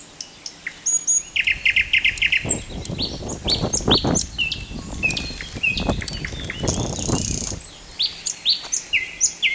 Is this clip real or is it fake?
real